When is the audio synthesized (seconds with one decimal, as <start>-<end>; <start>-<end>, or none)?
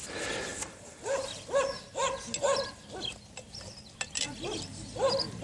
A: none